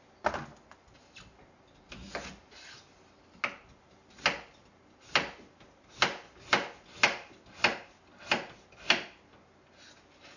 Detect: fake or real real